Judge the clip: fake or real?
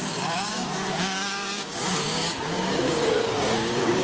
fake